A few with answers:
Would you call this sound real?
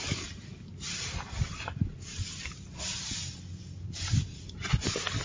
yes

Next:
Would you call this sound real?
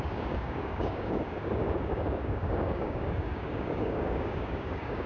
no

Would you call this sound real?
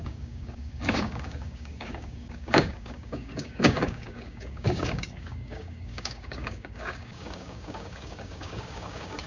no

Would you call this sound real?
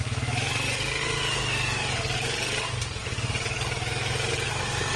no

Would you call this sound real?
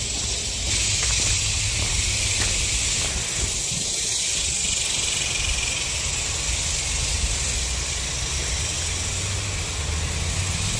yes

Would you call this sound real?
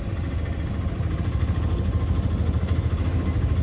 yes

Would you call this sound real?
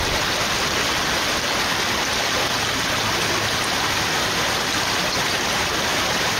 yes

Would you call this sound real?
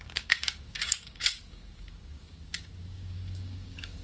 no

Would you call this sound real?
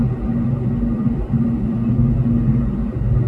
yes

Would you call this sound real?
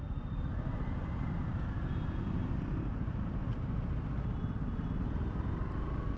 yes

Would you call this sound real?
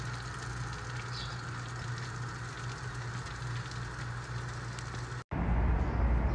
yes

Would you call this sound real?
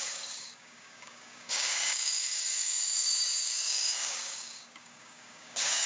no